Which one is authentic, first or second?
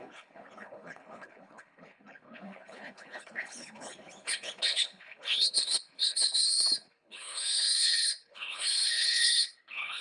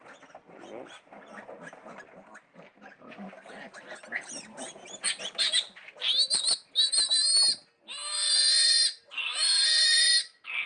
second